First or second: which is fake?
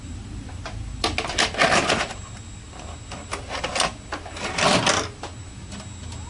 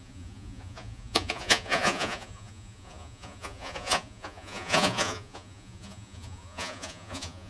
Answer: second